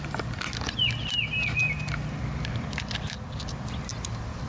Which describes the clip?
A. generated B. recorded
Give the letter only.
B